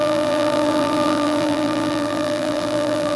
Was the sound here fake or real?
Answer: fake